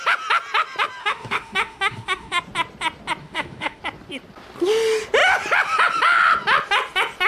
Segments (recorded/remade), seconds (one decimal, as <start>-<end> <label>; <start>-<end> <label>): 0.0-1.0 recorded; 1.0-2.4 remade; 2.4-3.2 recorded; 3.2-3.8 remade; 3.8-7.3 recorded